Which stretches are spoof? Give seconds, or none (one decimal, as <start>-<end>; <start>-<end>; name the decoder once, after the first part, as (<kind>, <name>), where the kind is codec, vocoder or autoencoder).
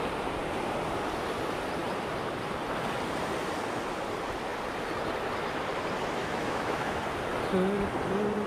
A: 6.2-7.0 (autoencoder, DAC-VAE)